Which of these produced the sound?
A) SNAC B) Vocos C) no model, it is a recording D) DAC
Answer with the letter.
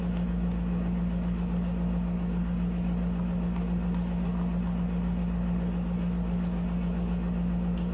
C